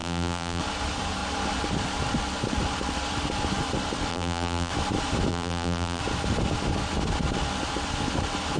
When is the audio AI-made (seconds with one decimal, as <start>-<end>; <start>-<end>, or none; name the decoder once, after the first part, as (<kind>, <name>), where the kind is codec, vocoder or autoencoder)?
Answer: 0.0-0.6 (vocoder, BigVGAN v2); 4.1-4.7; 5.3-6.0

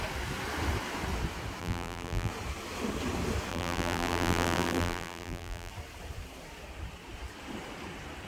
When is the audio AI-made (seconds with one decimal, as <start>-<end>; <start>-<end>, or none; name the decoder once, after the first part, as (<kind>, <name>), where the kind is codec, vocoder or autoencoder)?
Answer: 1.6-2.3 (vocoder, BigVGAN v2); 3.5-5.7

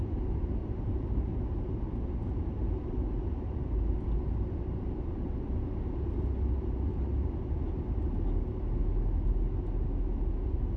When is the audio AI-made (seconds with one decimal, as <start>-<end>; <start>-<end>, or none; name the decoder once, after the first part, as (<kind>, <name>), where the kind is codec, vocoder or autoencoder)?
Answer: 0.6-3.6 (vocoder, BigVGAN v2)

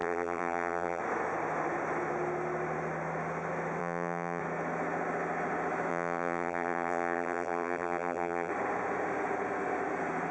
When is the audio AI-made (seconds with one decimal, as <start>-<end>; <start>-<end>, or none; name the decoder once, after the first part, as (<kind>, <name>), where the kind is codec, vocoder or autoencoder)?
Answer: 0.0-1.0 (vocoder, BigVGAN v2); 3.8-4.4; 5.9-8.5

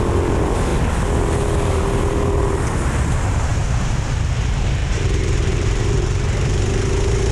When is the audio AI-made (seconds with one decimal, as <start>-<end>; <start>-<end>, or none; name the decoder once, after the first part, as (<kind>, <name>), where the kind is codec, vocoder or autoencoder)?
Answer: 3.5-4.1 (vocoder, BigVGAN v2); 4.8-6.6

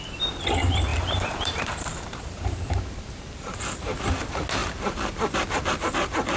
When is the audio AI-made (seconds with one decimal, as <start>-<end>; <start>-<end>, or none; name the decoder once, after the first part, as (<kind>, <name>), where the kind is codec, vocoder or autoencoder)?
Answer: 0.9-4.1 (vocoder, BigVGAN v2)